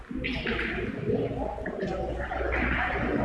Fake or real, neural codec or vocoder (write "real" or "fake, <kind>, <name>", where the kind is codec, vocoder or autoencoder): real